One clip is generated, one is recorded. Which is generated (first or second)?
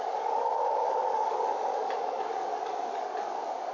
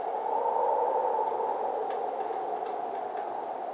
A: first